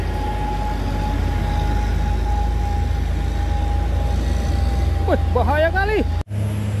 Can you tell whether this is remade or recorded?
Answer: recorded